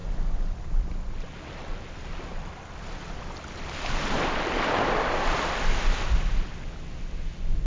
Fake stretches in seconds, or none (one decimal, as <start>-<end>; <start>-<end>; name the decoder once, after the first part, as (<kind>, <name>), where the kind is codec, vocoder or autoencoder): none